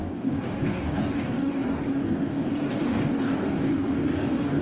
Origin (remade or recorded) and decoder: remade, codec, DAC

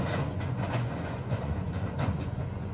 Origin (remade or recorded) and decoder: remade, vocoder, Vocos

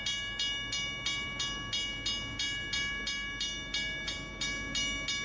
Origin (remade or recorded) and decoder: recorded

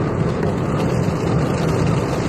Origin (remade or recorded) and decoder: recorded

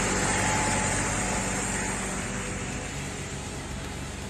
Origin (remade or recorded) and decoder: recorded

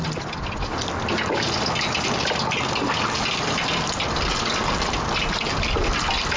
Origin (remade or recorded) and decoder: recorded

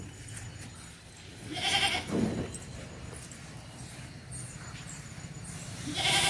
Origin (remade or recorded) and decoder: recorded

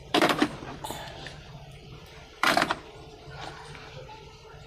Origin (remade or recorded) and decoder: remade, vocoder, BigVGAN v2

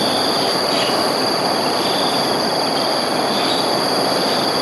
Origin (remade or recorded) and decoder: remade, vocoder, BigVGAN v2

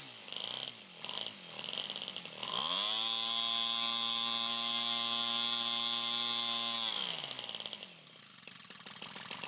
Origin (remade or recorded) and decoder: recorded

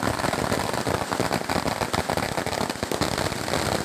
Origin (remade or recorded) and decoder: recorded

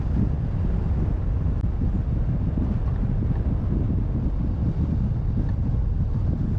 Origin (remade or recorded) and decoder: recorded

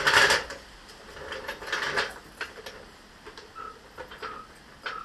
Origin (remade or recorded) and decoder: recorded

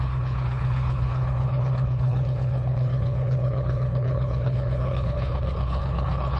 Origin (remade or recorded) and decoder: remade, codec, HILCodec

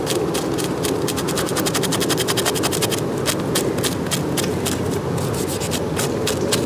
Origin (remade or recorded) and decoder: recorded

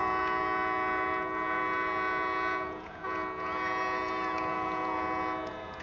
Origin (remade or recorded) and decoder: remade, vocoder, Vocos